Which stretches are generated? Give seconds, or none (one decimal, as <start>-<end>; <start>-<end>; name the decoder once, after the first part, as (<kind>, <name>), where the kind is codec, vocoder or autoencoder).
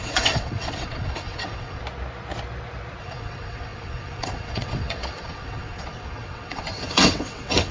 0.0-1.8 (vocoder, WaveNeXt); 3.0-7.7